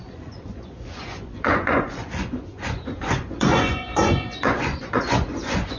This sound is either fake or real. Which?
fake